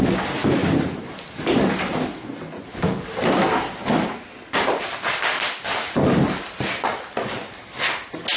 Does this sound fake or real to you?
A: real